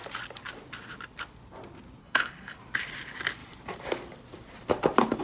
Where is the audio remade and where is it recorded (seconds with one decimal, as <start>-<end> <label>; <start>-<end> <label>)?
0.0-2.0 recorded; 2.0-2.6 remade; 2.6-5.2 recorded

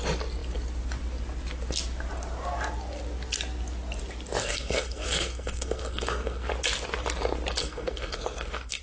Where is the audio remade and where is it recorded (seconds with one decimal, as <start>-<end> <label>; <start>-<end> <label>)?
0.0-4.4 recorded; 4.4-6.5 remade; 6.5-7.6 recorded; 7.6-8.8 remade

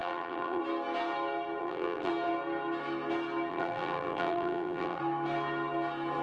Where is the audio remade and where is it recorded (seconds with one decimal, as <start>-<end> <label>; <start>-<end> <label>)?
0.0-0.6 remade; 0.6-1.6 recorded; 1.6-2.1 remade; 2.1-3.5 recorded; 3.5-5.0 remade; 5.0-6.2 recorded

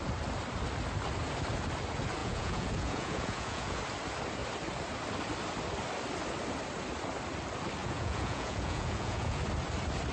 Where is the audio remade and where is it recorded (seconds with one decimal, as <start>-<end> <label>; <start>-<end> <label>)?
0.0-2.2 recorded; 2.2-3.8 remade; 3.8-7.8 recorded; 7.8-9.4 remade; 9.4-10.1 recorded

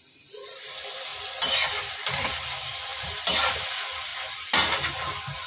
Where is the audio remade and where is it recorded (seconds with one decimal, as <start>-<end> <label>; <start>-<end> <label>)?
0.0-2.9 remade; 2.9-3.4 recorded; 3.4-4.1 remade; 4.1-5.5 recorded